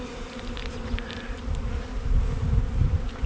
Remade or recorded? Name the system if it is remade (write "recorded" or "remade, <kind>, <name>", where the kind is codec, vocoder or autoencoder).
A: recorded